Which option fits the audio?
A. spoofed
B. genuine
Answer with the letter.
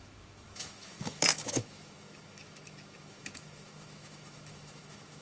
A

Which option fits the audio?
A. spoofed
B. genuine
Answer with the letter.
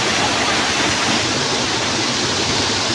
B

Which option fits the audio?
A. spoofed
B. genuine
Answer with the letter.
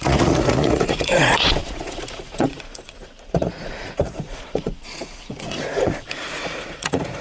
A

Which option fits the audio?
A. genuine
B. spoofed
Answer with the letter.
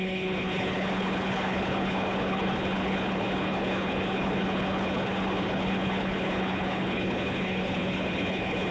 B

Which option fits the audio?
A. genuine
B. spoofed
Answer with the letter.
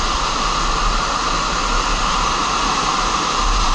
A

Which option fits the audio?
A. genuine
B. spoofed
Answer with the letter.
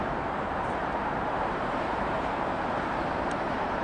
B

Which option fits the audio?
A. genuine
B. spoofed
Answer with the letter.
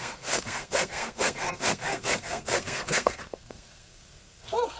B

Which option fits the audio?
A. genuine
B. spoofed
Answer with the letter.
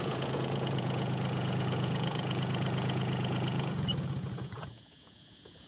B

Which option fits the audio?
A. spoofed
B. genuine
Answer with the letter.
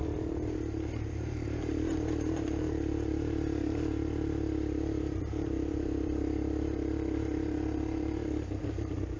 A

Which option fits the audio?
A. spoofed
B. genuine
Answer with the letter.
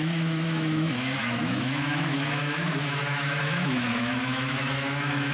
A